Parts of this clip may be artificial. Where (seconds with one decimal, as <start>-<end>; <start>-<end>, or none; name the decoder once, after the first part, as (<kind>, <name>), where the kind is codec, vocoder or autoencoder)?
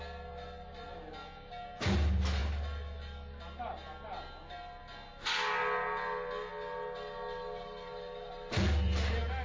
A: none